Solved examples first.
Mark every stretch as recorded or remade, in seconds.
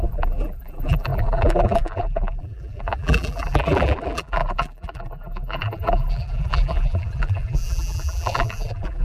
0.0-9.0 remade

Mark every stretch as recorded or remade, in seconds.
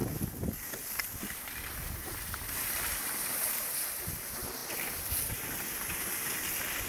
0.0-4.6 recorded; 4.6-5.6 remade; 5.6-6.9 recorded